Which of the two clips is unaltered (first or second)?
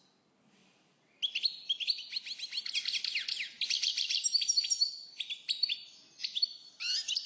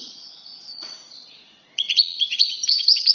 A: first